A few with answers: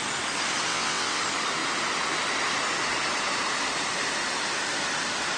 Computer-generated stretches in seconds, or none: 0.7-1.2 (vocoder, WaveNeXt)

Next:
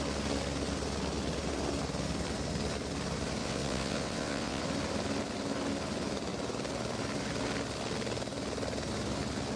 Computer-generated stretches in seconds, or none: 3.4-4.6 (vocoder, WaveNeXt)

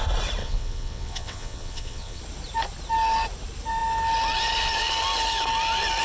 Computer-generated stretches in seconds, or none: 0.4-2.2 (vocoder, WaveNeXt)

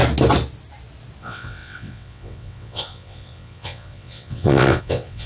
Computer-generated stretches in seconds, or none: 1.2-5.3 (vocoder, WaveNeXt)

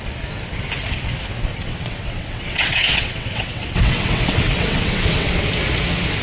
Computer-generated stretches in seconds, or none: 1.6-5.3 (vocoder, WaveNeXt)

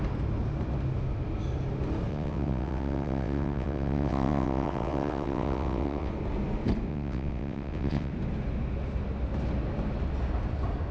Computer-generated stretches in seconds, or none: 2.1-6.1 (vocoder, WaveNeXt); 6.9-8.1

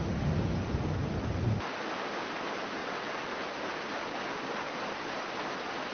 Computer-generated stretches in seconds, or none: 2.8-3.3 (vocoder, WaveNeXt)

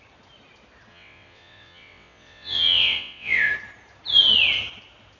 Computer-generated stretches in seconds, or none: 0.9-3.5 (vocoder, WaveNeXt)